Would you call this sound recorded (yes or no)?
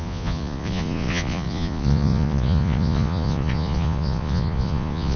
no